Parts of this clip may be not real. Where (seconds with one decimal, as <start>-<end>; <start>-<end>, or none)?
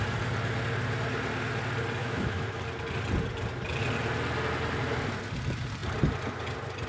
2.0-2.6